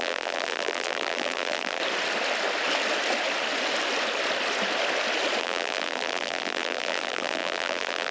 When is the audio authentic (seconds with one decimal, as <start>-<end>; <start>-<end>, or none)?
1.8-5.4